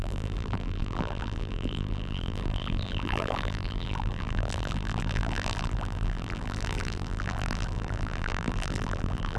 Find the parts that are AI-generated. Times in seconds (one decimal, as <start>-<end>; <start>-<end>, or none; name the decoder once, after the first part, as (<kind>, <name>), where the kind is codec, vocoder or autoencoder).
0.0-9.4 (vocoder, BigVGAN v2)